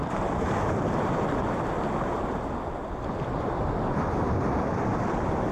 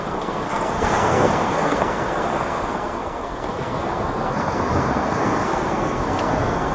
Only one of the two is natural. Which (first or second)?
first